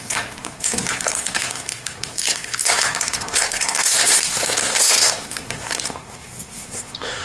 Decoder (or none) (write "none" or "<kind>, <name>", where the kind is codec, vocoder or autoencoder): codec, SNAC